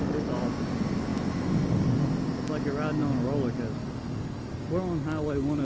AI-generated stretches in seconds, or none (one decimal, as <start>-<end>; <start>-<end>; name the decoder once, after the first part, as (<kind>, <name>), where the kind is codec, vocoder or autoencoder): none